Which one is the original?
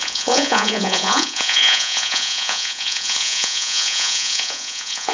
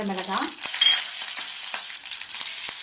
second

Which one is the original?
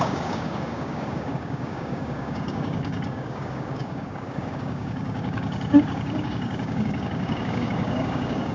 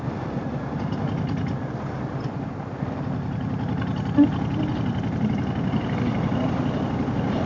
second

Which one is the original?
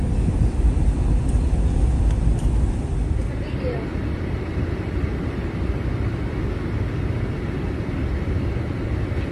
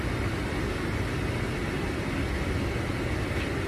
second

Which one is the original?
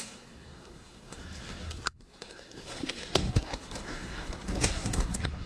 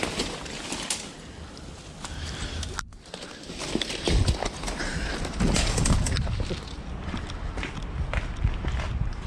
second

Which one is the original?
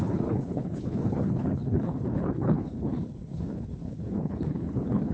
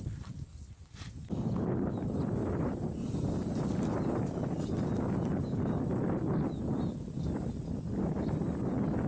second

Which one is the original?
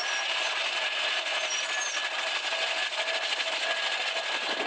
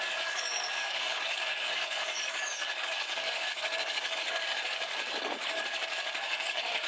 first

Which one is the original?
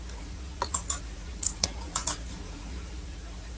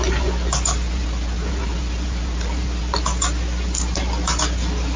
second